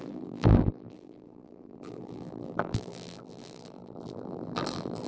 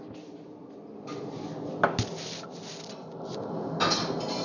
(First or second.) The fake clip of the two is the first